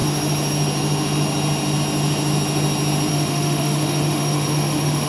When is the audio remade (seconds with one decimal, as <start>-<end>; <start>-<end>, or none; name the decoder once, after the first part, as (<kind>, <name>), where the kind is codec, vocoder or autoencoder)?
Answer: 3.1-5.1 (autoencoder, DAC-VAE)